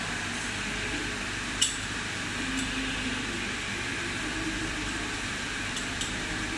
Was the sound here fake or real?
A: fake